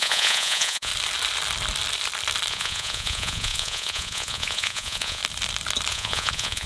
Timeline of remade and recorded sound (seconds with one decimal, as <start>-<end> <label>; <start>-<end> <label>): 0.0-0.9 remade; 0.9-2.5 recorded; 2.5-5.2 remade; 5.2-5.9 recorded; 5.9-6.7 remade